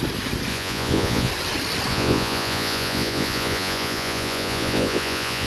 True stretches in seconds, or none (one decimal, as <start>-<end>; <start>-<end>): 0.0-0.5; 1.3-1.9